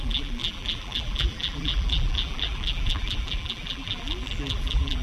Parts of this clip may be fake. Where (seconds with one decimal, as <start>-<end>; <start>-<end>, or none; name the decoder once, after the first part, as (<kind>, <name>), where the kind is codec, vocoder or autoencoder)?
0.0-5.0 (vocoder, BigVGAN v2)